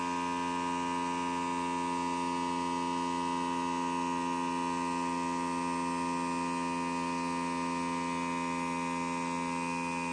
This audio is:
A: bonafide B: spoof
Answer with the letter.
A